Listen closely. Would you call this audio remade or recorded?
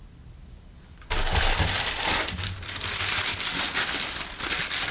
recorded